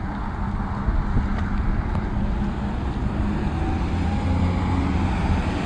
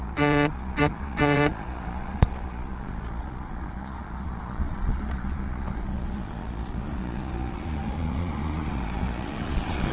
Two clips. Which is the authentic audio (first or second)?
first